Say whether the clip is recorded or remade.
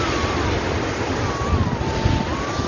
recorded